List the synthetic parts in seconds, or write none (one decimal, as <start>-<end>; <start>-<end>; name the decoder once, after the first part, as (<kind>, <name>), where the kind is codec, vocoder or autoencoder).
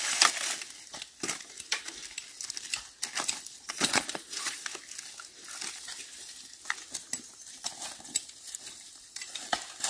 3.6-4.6 (vocoder, Vocos)